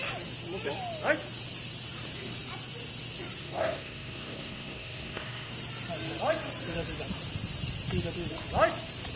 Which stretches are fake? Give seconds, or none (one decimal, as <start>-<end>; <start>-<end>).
3.4-5.5